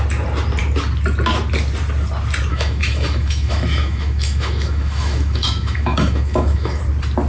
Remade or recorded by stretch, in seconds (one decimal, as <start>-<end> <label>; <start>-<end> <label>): 0.0-2.5 recorded; 2.5-6.8 remade; 6.8-7.3 recorded